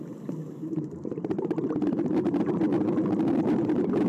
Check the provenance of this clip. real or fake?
fake